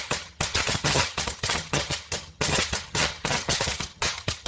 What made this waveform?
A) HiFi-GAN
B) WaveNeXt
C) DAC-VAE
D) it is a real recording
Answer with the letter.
A